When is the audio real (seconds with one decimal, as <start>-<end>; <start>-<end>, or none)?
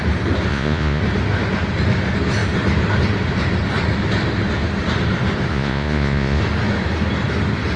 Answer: 0.0-0.5; 1.0-5.5; 6.4-7.8